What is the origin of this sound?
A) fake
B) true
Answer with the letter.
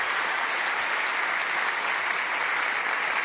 B